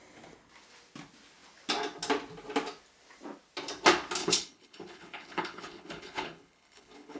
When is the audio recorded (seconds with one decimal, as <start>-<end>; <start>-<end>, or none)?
0.0-4.2